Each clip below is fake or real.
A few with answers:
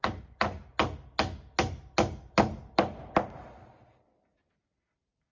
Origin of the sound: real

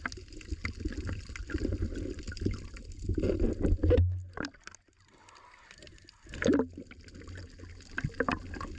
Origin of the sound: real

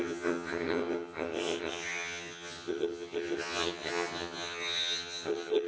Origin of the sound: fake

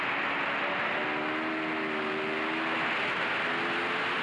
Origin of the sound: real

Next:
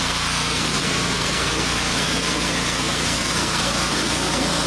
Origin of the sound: fake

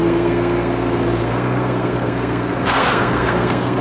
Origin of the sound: fake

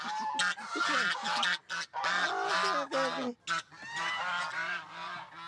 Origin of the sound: real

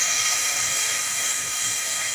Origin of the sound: fake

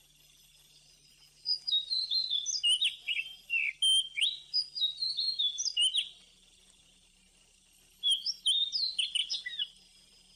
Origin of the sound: real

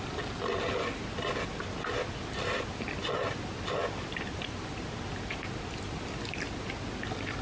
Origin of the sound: real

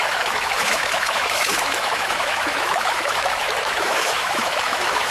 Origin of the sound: fake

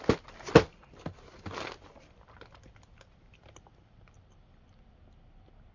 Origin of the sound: real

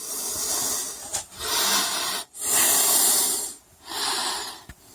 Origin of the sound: real